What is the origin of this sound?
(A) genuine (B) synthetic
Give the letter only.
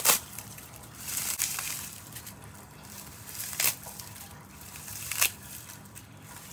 B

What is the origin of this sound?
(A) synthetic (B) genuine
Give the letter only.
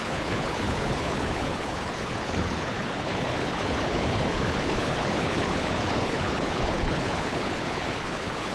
A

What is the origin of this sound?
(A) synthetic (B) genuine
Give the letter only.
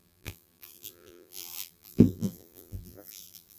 A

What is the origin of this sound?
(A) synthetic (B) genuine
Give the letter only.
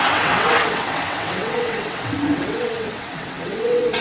A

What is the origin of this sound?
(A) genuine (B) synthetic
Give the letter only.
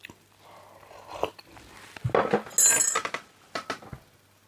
A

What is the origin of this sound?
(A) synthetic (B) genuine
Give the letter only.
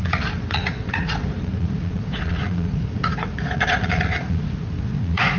A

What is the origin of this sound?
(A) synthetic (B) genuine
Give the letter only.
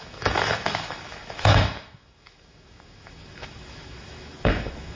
A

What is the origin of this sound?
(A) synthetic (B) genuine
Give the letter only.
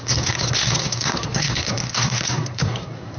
A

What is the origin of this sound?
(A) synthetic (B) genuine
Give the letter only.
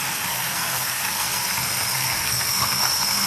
A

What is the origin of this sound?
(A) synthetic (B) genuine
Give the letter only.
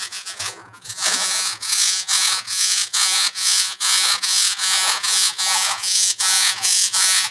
A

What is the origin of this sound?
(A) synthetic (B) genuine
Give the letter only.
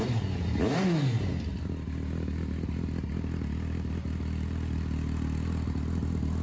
B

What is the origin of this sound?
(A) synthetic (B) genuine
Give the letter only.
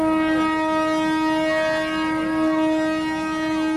B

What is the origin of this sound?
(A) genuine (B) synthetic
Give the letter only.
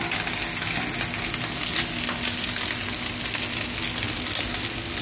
A